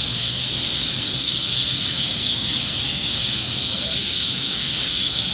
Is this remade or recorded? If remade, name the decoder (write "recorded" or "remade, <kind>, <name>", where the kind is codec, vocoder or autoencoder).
remade, codec, SNAC